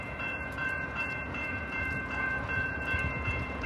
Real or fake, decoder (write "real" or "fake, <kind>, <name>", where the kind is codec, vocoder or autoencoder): fake, vocoder, Vocos